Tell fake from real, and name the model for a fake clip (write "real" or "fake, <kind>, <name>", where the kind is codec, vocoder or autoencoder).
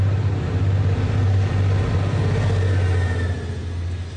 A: real